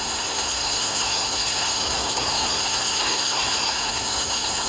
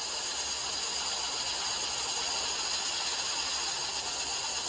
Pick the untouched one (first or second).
second